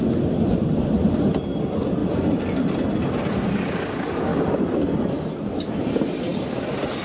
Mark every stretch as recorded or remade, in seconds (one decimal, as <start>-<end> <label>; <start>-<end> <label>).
0.0-4.3 recorded; 4.3-4.9 remade; 4.9-7.0 recorded